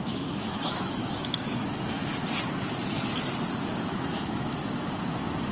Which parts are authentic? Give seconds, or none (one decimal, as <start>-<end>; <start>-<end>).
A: 2.1-3.7

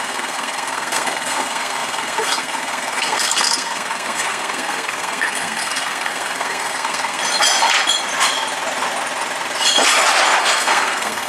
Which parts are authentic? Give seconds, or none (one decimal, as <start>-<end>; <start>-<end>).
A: 7.2-10.4

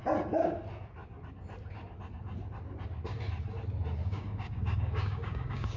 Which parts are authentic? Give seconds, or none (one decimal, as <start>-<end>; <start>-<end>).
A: 0.0-4.0

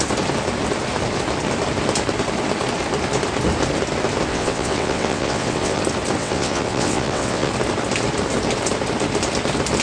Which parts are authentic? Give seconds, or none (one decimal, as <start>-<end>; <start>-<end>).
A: 0.0-4.3; 5.8-6.2; 7.5-9.8

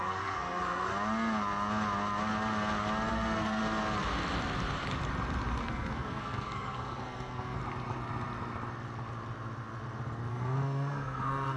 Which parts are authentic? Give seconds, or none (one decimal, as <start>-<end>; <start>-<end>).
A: 0.9-3.1; 3.6-5.6; 7.6-10.3

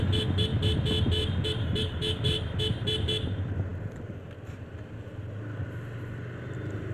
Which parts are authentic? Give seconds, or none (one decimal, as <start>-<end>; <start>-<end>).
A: 0.0-6.9